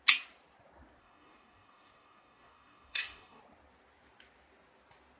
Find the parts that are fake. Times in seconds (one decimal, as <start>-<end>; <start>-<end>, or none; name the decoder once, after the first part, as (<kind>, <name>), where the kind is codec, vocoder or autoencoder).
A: 1.0-3.4 (codec, DAC)